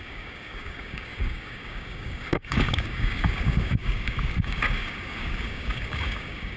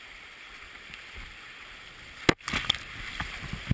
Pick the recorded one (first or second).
second